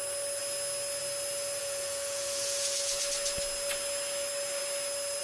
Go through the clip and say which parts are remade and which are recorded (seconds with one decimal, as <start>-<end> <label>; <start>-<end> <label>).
0.0-1.6 recorded; 1.6-3.0 remade; 3.0-5.2 recorded